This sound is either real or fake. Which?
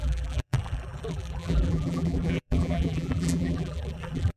fake